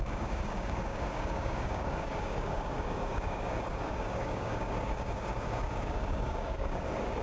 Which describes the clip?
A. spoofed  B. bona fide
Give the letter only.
A